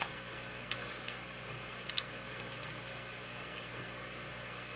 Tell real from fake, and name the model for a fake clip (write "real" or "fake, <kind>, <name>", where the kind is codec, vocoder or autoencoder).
fake, codec, SNAC